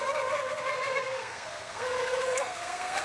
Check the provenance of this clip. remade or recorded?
remade